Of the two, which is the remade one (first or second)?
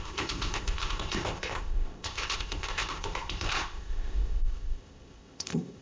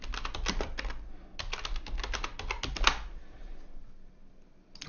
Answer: first